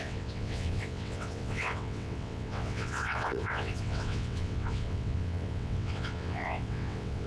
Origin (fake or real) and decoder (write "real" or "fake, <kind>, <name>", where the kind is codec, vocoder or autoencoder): fake, vocoder, WaveNeXt